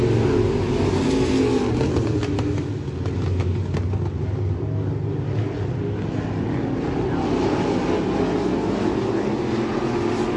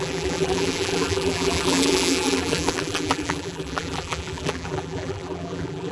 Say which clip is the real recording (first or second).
first